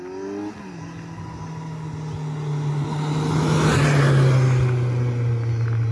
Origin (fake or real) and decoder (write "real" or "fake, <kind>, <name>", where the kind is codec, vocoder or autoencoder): real